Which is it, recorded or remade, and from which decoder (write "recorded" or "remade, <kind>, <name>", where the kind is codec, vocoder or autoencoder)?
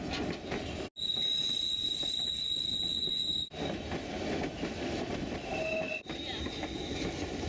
recorded